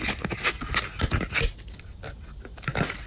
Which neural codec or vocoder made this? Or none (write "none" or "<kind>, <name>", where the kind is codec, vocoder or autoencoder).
none